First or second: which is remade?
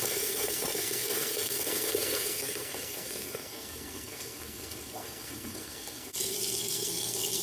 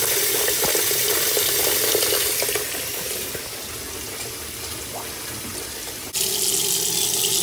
first